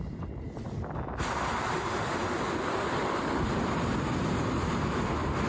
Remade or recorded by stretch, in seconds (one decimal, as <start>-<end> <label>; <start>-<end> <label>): 0.0-2.2 recorded; 2.2-4.9 remade; 4.9-5.5 recorded